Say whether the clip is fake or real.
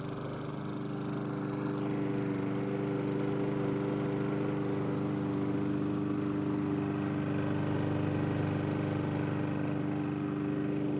real